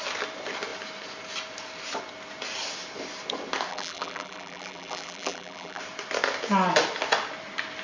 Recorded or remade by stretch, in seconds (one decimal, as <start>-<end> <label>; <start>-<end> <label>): 0.0-3.7 recorded; 3.7-5.8 remade; 5.8-7.8 recorded